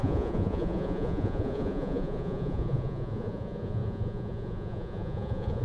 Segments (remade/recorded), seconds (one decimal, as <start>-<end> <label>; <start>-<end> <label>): 0.0-5.6 remade